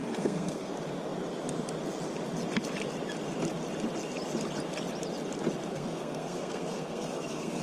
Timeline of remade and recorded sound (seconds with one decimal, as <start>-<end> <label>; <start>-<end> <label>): 0.0-0.7 remade; 0.7-5.7 recorded; 5.7-7.6 remade